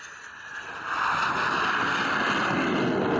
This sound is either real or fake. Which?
real